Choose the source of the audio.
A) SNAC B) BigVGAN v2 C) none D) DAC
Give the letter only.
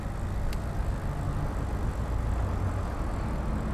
C